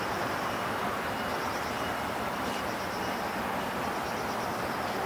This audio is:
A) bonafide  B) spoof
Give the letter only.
A